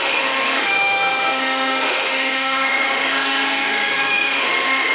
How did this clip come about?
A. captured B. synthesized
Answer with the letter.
B